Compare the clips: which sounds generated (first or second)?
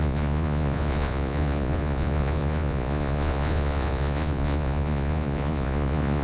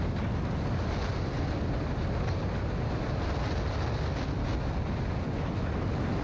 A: first